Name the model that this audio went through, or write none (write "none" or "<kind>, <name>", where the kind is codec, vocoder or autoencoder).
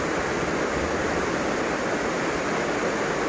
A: none